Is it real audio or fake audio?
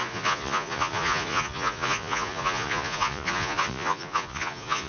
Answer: fake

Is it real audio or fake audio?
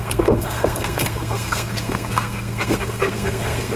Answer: fake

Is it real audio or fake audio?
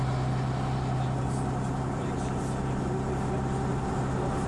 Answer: real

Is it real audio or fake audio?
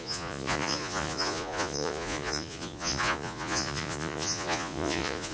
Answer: fake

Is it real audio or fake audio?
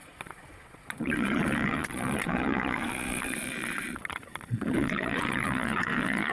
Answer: fake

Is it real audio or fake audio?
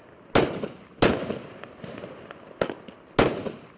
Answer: real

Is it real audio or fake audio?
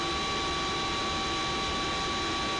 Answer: real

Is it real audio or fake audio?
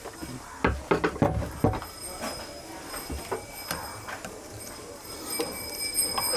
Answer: real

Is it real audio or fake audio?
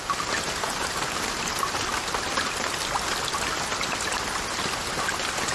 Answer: real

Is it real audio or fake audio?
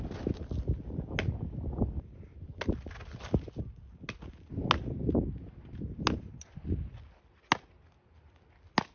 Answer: real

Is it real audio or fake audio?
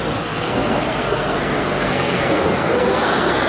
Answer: fake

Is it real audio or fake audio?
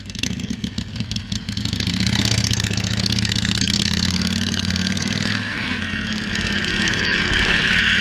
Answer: fake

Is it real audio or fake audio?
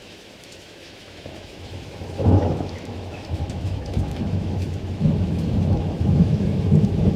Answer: fake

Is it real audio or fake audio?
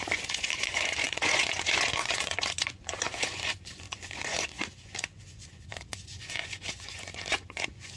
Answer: fake